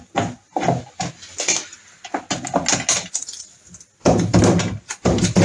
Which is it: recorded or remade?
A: recorded